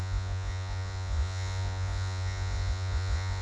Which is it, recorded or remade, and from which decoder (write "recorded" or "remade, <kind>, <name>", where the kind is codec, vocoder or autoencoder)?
remade, vocoder, Vocos